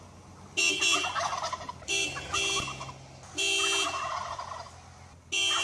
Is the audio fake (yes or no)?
no